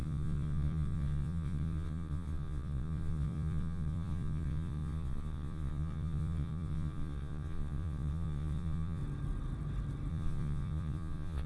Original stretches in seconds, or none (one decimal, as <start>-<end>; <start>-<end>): 9.0-10.1